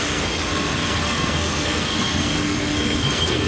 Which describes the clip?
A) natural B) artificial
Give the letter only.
B